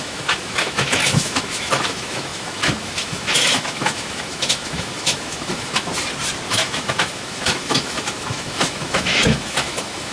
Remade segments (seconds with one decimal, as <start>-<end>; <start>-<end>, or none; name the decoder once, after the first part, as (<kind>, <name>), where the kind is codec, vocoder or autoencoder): 0.0-5.9 (autoencoder, DAC-VAE); 6.5-10.1